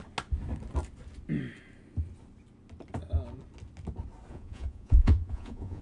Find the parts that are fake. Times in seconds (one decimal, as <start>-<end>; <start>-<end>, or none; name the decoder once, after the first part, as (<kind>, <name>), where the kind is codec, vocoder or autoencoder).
4.3-5.8 (vocoder, Vocos)